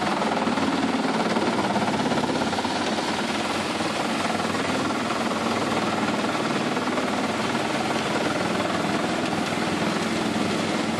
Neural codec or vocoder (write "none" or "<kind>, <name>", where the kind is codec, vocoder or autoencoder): none